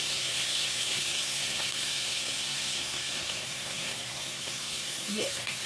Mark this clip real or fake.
fake